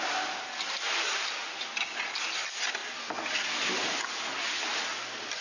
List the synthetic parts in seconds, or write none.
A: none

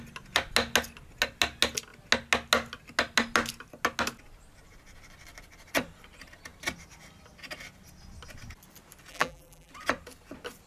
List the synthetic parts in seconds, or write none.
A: 9.1-9.7 (vocoder, BigVGAN v2)

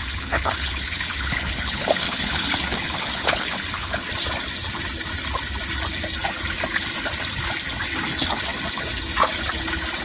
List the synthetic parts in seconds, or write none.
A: 0.0-4.0 (codec, HILCodec)

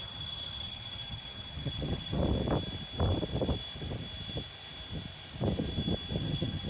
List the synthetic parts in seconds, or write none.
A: 0.0-2.2 (vocoder, HiFi-GAN); 6.2-6.7

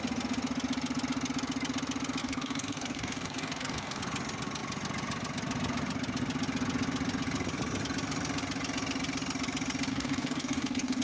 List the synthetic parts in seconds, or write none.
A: 2.2-4.0 (codec, DAC); 9.9-11.0